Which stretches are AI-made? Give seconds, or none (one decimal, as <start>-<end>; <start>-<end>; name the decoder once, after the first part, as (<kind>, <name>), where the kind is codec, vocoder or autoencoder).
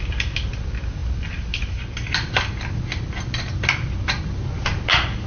none